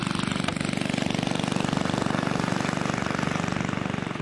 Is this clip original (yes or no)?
yes